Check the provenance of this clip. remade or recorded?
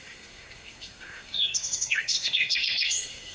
remade